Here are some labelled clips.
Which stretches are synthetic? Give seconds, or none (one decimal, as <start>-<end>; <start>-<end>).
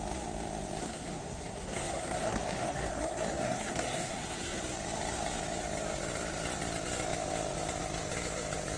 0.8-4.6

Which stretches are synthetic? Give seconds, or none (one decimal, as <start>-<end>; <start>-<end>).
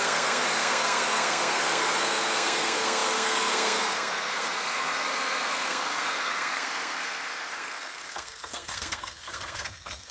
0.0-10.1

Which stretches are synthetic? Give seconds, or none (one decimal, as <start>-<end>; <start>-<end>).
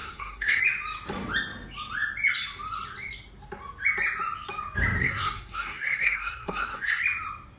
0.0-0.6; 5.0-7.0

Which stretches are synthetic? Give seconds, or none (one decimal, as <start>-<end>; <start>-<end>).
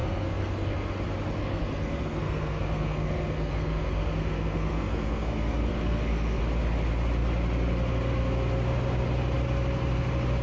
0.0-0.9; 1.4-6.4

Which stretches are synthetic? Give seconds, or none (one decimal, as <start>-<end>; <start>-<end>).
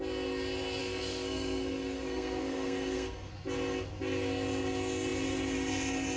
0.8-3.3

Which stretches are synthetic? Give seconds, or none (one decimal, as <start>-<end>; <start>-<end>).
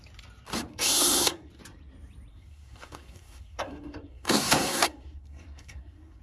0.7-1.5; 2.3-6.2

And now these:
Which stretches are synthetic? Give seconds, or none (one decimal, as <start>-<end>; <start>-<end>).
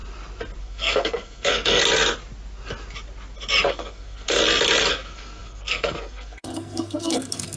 0.6-1.8; 3.7-4.4; 4.9-7.6